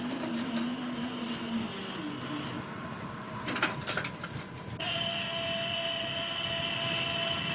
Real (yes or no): yes